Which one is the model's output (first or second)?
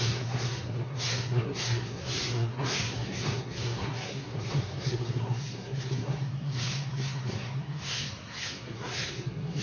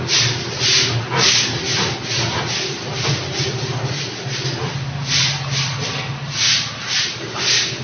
first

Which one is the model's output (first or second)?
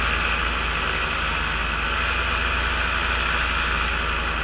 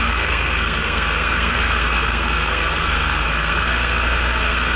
second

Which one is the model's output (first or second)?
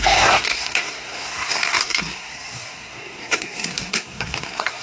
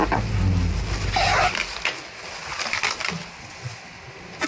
first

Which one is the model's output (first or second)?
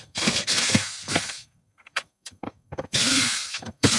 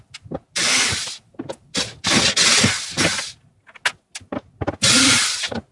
first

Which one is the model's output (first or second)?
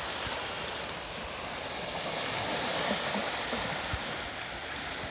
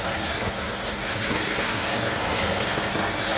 second